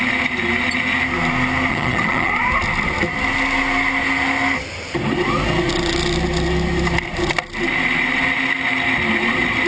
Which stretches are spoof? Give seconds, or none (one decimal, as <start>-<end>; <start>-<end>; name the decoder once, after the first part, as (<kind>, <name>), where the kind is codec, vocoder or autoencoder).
1.7-2.3 (vocoder, HiFi-GAN)